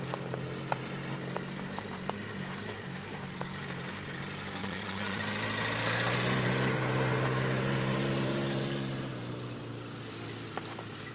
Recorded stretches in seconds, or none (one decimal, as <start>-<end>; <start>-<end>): 0.0-4.6; 5.2-11.1